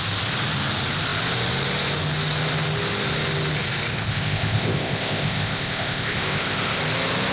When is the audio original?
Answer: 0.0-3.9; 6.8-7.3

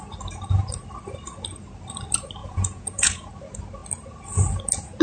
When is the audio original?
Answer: 0.0-2.4; 3.3-5.0